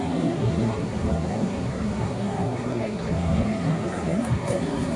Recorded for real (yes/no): no